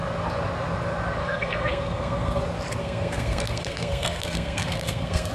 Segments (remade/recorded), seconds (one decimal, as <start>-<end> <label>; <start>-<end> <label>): 0.0-1.2 recorded; 1.2-2.4 remade; 2.4-2.8 recorded; 2.8-5.3 remade